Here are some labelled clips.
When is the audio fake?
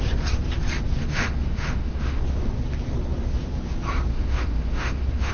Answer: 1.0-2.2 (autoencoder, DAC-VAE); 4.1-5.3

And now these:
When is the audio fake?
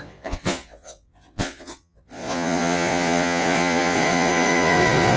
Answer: 0.0-5.2 (vocoder, Vocos)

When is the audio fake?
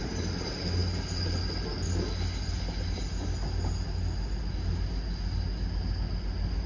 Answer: none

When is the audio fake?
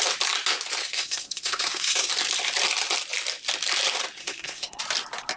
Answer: 0.8-2.1 (codec, SNAC); 4.2-4.8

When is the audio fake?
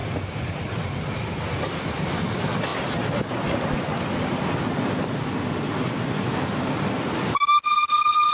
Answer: none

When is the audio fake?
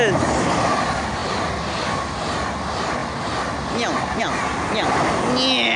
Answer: none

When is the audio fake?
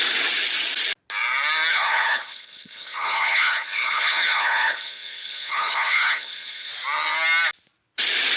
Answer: 1.7-6.7 (codec, HILCodec)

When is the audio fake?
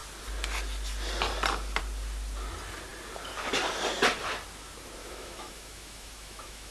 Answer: 5.0-6.7 (autoencoder, DAC-VAE)